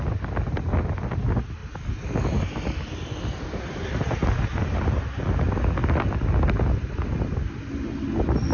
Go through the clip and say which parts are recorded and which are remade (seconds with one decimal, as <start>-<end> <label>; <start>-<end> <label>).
0.0-8.5 recorded